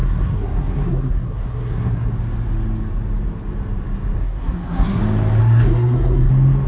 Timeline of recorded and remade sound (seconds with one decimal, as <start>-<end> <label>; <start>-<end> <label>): 0.0-2.1 remade; 2.1-4.2 recorded; 4.2-5.0 remade; 5.0-5.4 recorded; 5.4-6.3 remade; 6.3-6.7 recorded